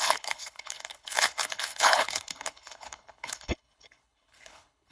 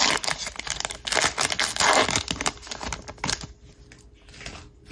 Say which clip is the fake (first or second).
first